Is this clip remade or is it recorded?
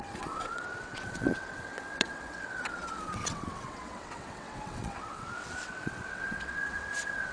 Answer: remade